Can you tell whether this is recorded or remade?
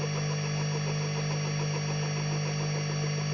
recorded